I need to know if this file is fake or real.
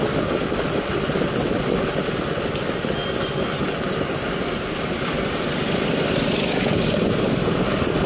real